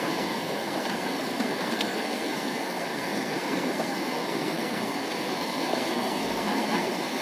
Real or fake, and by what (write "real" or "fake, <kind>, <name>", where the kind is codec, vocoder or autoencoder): fake, codec, SNAC